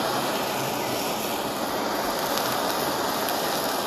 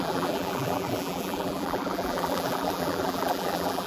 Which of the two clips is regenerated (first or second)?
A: second